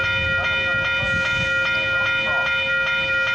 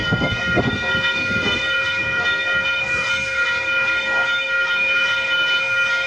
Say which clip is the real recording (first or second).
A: first